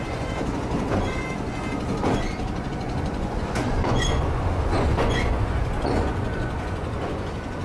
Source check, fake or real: fake